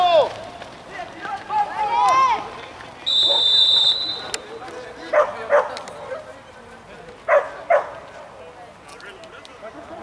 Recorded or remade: recorded